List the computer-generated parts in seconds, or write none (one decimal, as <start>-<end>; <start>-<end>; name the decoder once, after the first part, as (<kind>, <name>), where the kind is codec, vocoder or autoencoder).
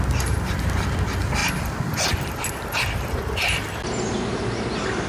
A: none